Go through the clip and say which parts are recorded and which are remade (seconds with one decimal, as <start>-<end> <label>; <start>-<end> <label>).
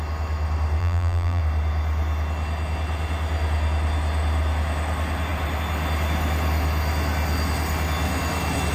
0.0-0.8 recorded; 0.8-1.4 remade; 1.4-8.7 recorded